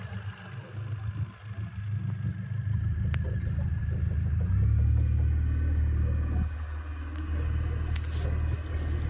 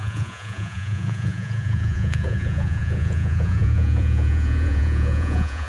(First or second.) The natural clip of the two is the first